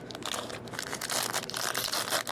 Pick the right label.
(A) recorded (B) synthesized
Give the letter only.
A